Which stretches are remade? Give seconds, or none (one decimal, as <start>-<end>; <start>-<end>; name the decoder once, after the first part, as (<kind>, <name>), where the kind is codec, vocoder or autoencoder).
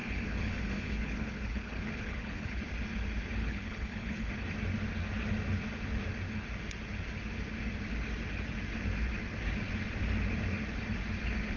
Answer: 0.0-2.6 (codec, HILCodec); 3.4-4.3